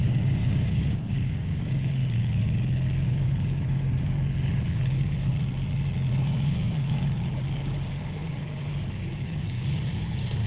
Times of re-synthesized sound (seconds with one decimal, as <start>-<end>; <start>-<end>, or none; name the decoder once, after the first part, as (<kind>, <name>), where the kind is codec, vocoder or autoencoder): 0.0-5.3 (codec, DAC); 6.2-10.5